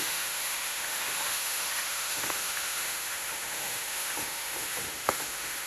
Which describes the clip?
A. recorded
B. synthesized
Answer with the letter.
B